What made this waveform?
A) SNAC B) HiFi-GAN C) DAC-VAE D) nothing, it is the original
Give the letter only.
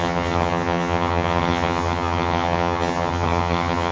B